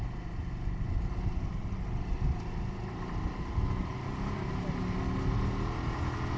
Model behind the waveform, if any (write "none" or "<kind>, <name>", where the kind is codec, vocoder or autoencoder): none